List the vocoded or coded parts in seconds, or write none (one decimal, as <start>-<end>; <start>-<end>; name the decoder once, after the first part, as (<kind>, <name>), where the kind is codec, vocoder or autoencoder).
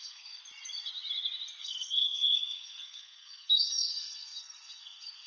0.0-0.4 (codec, SNAC); 1.6-5.3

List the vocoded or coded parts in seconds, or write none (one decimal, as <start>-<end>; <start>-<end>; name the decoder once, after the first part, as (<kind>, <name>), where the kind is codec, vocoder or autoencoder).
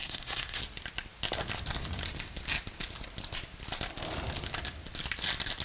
0.0-0.6 (codec, SNAC)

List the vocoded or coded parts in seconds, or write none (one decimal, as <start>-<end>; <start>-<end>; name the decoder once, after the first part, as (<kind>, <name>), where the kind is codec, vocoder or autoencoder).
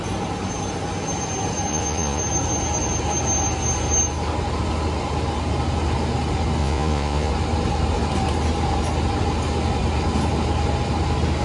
1.7-2.2 (vocoder, Vocos); 6.6-7.3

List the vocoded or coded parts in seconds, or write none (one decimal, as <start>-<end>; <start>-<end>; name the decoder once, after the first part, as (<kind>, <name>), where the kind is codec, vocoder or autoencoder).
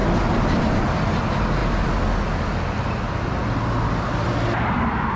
none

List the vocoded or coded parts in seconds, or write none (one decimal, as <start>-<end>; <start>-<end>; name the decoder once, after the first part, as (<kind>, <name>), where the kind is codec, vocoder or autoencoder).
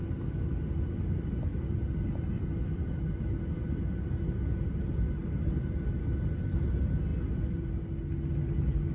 none